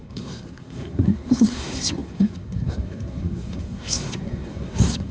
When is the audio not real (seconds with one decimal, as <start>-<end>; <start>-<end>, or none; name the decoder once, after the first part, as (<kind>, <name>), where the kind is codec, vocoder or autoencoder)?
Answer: 0.0-5.1 (codec, SNAC)